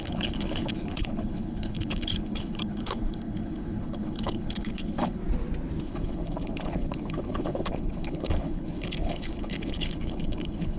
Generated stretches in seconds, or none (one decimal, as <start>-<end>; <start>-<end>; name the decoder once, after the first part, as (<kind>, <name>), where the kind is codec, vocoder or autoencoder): 0.0-5.2 (codec, HILCodec); 5.8-10.8